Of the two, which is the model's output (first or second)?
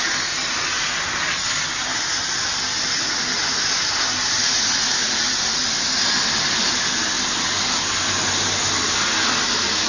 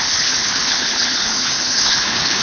second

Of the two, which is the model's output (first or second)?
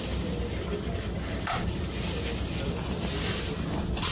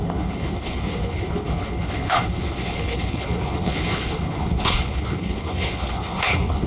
second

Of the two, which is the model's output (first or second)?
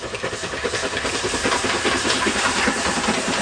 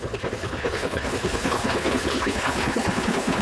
second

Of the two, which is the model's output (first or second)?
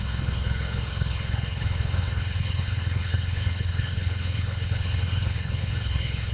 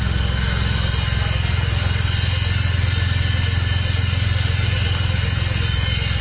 first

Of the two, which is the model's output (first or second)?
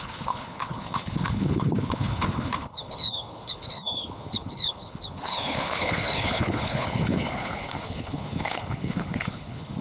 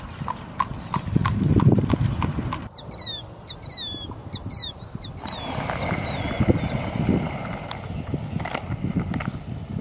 first